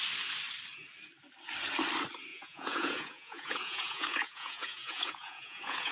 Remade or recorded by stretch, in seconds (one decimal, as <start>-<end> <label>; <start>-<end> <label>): 0.0-2.3 recorded; 2.3-5.9 remade